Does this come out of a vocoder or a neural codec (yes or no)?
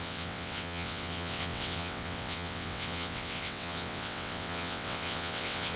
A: yes